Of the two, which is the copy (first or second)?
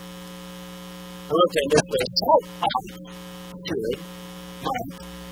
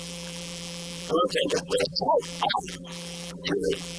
second